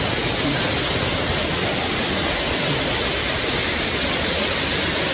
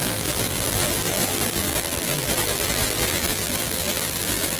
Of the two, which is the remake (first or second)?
second